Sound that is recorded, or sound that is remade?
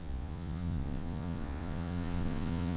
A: remade